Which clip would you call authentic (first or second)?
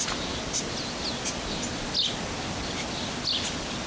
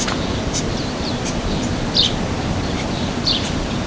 first